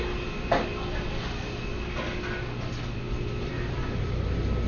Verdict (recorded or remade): recorded